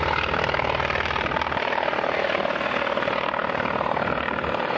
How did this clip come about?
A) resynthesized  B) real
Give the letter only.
B